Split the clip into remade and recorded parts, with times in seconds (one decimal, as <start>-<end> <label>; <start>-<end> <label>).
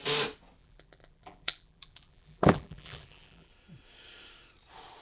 0.0-0.6 recorded; 0.6-3.5 remade; 3.5-5.0 recorded